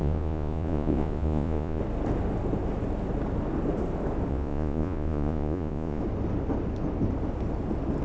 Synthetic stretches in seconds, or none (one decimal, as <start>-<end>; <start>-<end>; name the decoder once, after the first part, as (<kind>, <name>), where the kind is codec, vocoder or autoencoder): 0.0-1.8 (vocoder, Vocos); 4.3-6.0